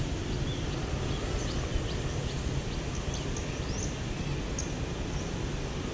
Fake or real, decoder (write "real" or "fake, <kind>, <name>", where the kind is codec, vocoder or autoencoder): real